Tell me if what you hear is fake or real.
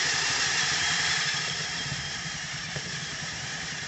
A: fake